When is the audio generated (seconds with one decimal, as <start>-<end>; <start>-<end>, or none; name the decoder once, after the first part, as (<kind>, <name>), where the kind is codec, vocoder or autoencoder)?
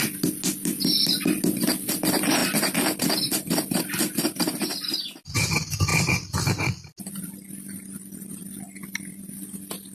none